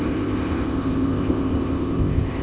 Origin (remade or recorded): remade